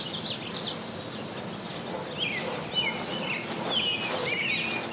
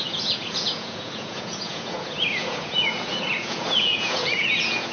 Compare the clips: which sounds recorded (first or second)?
first